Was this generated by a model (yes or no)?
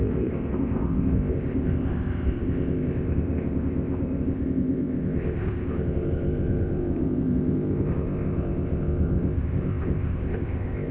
yes